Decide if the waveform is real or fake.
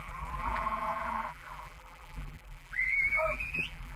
fake